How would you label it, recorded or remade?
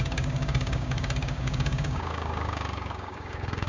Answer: remade